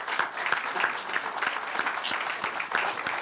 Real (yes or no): yes